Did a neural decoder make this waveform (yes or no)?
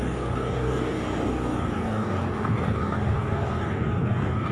yes